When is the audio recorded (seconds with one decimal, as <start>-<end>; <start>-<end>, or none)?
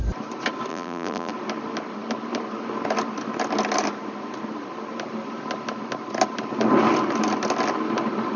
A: 0.0-0.7; 1.3-8.4